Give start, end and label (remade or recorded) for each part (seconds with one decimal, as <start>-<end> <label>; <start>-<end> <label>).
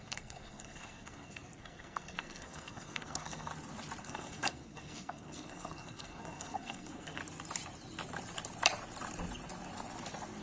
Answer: 0.0-3.5 remade; 3.5-4.0 recorded; 4.0-7.2 remade; 7.2-10.4 recorded